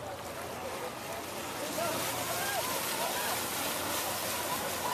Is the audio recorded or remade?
recorded